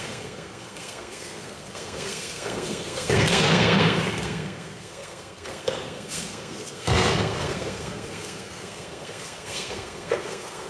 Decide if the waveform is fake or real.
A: fake